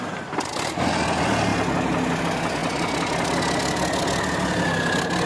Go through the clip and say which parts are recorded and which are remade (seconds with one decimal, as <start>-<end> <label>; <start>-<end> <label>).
0.0-5.3 recorded